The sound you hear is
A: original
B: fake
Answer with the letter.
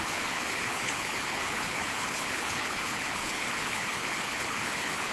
B